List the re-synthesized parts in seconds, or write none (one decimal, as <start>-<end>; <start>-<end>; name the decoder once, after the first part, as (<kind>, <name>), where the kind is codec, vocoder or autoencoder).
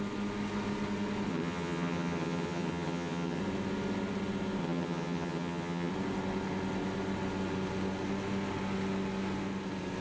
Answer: 1.3-3.4 (vocoder, HiFi-GAN); 4.6-5.9